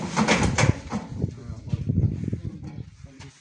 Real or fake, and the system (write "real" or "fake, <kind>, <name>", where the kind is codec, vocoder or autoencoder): real